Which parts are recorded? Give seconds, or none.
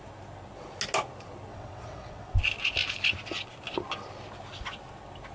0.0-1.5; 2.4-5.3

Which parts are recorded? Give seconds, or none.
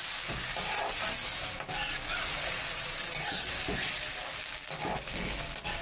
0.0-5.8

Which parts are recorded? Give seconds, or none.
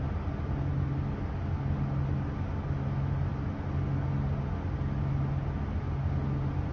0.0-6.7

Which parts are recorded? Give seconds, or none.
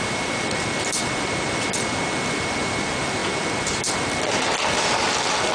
0.0-5.5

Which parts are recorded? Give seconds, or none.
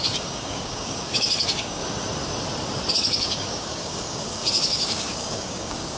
1.8-2.9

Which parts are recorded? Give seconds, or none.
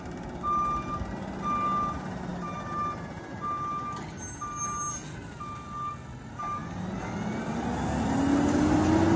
0.0-9.2